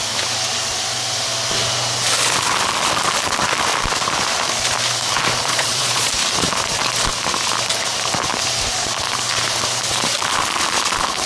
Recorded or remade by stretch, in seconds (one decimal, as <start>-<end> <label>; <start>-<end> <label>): 0.0-5.4 recorded; 5.4-6.1 remade; 6.1-11.3 recorded

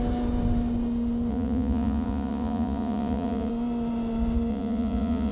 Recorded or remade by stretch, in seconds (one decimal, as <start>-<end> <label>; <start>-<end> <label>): 0.0-1.3 recorded; 1.3-3.5 remade; 3.5-4.5 recorded; 4.5-5.3 remade

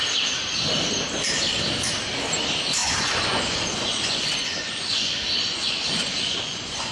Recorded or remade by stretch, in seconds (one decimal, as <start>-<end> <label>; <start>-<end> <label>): 0.0-2.8 recorded; 2.8-6.9 remade